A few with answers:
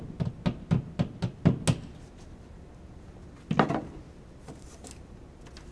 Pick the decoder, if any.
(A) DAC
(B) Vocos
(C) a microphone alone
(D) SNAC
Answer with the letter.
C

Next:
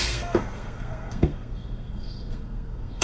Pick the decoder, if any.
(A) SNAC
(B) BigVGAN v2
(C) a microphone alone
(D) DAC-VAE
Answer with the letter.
A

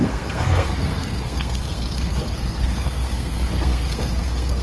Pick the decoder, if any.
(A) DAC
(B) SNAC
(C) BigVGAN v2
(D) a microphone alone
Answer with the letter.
B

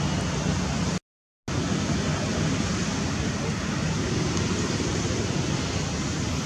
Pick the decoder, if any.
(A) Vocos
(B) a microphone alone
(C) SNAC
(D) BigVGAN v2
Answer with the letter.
B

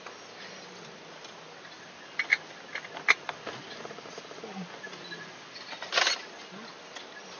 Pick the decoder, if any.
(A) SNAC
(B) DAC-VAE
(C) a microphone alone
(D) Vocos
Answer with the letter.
C